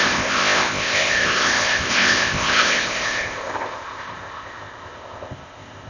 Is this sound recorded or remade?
remade